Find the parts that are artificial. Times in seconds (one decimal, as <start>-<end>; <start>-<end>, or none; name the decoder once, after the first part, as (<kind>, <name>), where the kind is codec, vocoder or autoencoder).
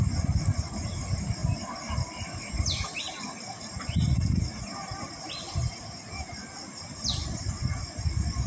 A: 1.4-3.0 (vocoder, BigVGAN v2); 4.9-5.7